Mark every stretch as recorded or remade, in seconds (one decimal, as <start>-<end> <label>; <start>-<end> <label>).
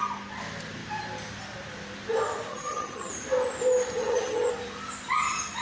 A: 0.0-2.5 recorded; 2.5-3.1 remade; 3.1-4.0 recorded; 4.0-4.5 remade; 4.5-5.6 recorded